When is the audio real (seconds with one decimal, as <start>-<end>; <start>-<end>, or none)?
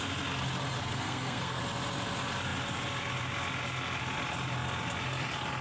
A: 0.0-0.8; 1.6-5.6